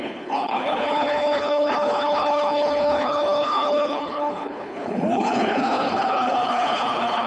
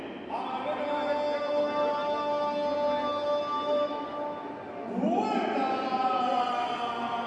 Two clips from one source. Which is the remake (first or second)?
first